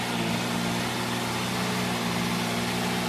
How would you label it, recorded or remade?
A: recorded